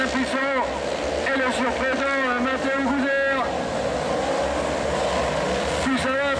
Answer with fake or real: real